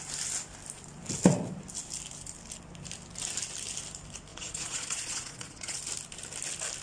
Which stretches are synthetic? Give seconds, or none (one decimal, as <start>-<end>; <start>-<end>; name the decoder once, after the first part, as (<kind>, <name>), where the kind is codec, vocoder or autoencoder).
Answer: 4.3-5.8 (vocoder, Vocos)